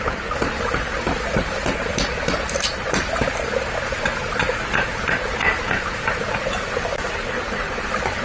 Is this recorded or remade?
recorded